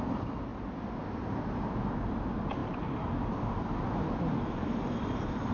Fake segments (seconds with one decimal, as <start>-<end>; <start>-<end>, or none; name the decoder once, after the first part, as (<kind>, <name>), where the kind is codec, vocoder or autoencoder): 2.6-5.5 (vocoder, BigVGAN v2)